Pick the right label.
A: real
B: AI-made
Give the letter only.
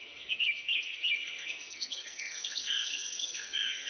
B